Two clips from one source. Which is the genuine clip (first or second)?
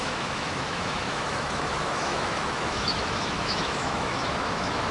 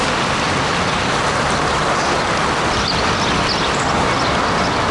second